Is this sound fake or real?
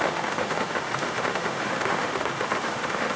fake